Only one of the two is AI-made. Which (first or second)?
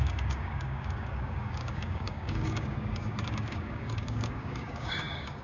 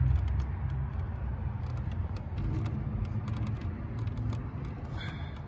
first